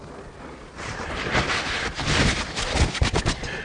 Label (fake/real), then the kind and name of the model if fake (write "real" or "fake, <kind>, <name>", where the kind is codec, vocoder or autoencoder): real